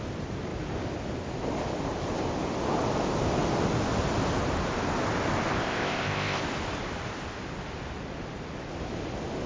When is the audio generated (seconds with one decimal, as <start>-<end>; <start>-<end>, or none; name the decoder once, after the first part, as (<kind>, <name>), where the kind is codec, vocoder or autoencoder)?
5.5-6.4 (codec, ZipCodec)